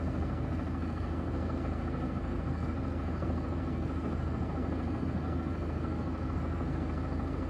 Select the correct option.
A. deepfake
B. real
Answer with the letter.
A